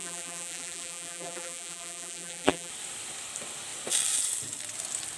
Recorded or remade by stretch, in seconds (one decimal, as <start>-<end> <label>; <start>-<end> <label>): 0.0-2.7 remade; 2.7-5.2 recorded